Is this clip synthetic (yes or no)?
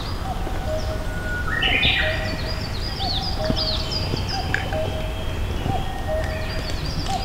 no